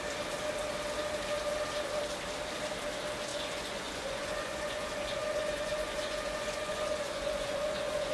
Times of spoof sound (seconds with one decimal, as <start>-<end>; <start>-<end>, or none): 3.3-8.1